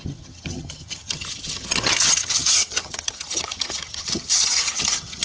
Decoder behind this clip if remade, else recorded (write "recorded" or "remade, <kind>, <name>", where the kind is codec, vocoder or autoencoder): remade, vocoder, HiFi-GAN